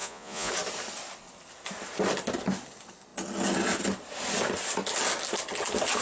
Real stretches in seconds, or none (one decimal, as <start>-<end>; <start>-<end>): 0.5-6.0